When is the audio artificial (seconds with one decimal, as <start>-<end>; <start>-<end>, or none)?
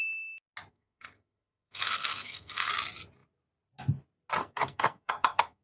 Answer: 0.7-2.7; 4.4-5.6